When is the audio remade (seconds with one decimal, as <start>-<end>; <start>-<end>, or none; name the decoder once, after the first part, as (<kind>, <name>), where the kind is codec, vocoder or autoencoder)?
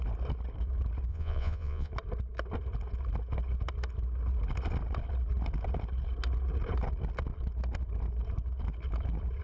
1.1-1.9 (vocoder, Vocos)